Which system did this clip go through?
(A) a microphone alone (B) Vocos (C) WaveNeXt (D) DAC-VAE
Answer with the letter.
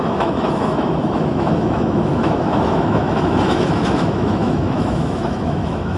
D